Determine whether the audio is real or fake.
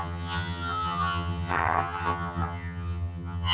fake